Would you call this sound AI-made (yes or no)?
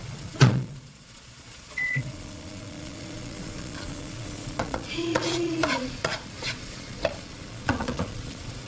yes